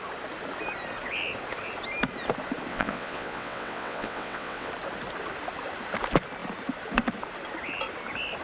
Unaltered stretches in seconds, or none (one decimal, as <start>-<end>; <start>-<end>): 0.0-2.7; 4.7-8.4